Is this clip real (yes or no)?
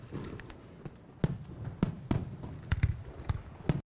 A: yes